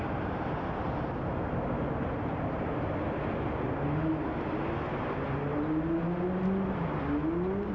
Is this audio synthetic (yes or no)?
no